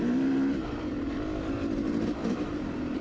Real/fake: real